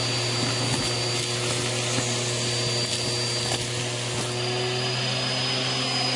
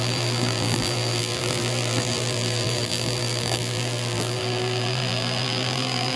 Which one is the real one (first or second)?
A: first